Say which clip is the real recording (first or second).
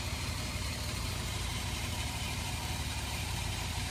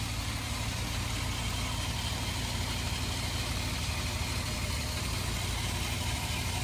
second